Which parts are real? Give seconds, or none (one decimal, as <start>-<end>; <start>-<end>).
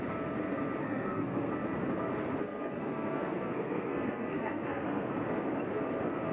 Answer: 0.0-0.8; 1.5-2.4; 5.1-6.3